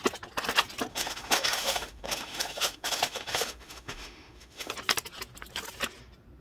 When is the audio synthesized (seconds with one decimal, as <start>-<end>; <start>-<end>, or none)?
0.9-4.7